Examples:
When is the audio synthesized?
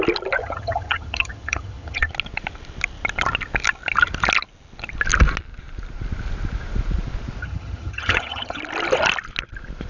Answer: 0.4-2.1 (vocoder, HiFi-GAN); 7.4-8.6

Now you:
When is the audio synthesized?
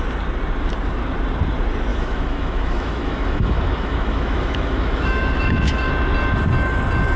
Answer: 1.9-5.9 (autoencoder, DAC-VAE)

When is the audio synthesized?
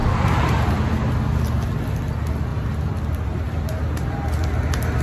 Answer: none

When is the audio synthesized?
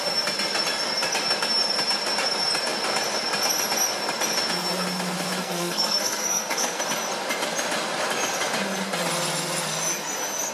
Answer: 5.4-6.8 (codec, SNAC)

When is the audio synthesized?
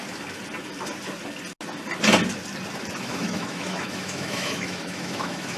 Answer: 3.0-5.6 (autoencoder, DAC-VAE)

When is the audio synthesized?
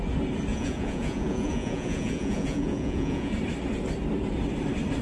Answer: 0.5-3.3 (vocoder, Vocos)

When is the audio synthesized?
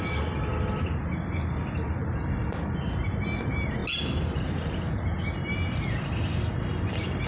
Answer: none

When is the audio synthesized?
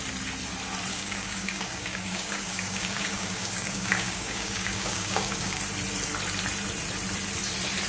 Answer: 0.9-5.6 (codec, DAC)